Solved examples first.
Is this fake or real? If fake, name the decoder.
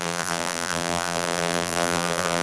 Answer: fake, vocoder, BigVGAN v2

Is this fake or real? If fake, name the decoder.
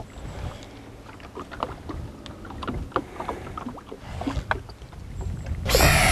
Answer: real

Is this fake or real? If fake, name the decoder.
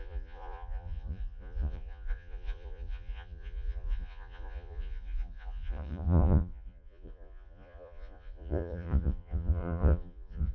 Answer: fake, vocoder, Vocos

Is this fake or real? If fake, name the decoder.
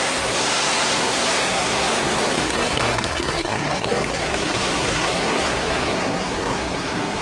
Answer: fake, codec, SNAC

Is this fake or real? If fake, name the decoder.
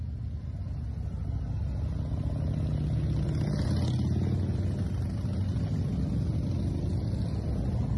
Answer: real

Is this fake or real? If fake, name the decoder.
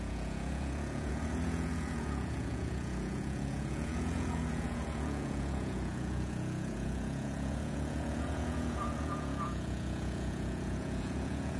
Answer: fake, vocoder, Vocos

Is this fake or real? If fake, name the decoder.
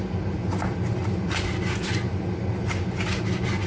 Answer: real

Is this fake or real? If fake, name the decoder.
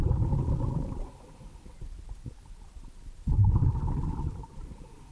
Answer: real